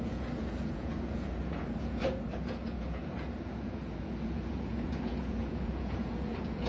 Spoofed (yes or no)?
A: yes